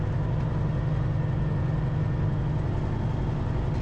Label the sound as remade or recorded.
recorded